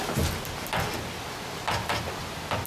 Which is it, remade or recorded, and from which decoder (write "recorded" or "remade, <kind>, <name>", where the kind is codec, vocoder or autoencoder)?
recorded